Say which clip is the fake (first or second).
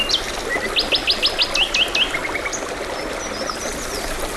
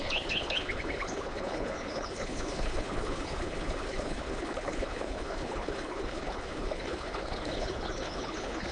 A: second